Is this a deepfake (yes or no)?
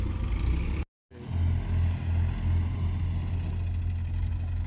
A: no